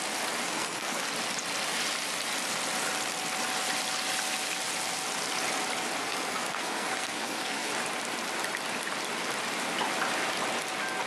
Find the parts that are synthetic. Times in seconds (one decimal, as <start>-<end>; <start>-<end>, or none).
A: 0.4-1.1; 6.0-7.7